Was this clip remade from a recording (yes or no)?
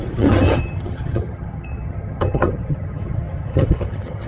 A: yes